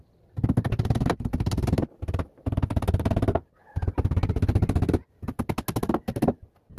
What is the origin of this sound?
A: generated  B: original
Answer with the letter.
B